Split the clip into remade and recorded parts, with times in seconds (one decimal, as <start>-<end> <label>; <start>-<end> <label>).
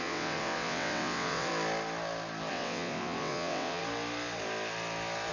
0.0-1.5 remade; 1.5-2.5 recorded; 2.5-3.8 remade; 3.8-5.3 recorded